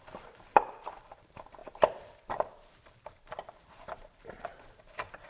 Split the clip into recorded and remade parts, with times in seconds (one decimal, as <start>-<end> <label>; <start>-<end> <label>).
0.0-0.5 remade; 0.5-1.1 recorded; 1.1-4.5 remade; 4.5-5.3 recorded